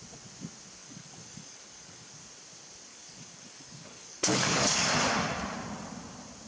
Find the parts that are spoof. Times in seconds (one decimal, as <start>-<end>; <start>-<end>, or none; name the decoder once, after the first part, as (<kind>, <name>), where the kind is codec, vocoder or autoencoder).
0.8-2.1 (codec, DAC); 2.9-4.9